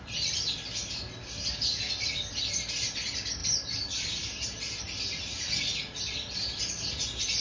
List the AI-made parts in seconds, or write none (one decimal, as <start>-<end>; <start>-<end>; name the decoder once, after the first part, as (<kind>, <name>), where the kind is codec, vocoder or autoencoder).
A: none